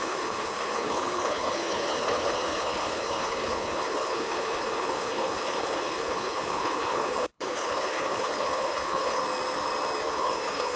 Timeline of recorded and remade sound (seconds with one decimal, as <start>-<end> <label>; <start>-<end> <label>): 0.0-9.2 remade; 9.2-10.1 recorded; 10.1-10.8 remade